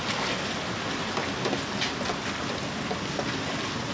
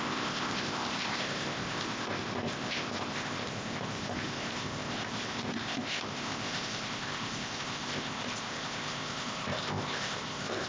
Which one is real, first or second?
first